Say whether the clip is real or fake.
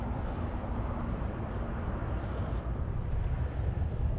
fake